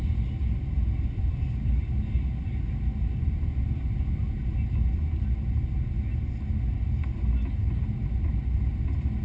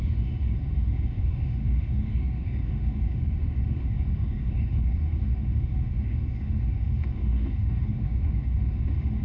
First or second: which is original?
first